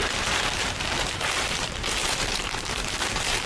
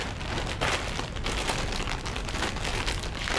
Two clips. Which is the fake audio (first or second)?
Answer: first